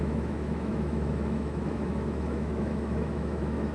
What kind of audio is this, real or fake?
fake